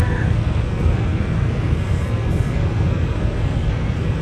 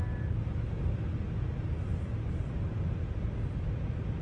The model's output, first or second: first